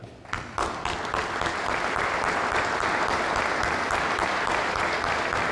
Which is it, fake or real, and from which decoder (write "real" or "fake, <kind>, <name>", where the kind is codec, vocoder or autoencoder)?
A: fake, vocoder, BigVGAN v2